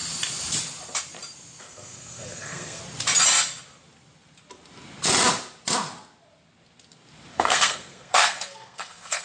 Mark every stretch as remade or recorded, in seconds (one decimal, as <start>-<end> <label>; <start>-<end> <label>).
0.0-1.6 recorded; 1.6-2.8 remade; 2.8-7.3 recorded; 7.3-9.2 remade